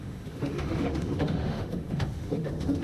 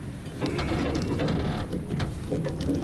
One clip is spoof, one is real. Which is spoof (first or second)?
first